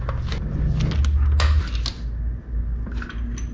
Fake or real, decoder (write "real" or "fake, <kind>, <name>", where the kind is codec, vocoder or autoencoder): real